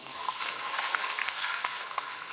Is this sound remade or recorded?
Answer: remade